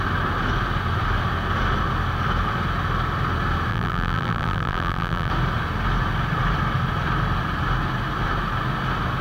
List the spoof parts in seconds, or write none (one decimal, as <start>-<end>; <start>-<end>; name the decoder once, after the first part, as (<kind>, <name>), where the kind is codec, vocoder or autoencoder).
3.7-5.3 (vocoder, BigVGAN v2)